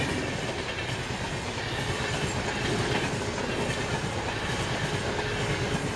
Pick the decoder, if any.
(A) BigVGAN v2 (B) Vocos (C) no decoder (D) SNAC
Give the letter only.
C